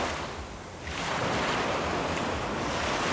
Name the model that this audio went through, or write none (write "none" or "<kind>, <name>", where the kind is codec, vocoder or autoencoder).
none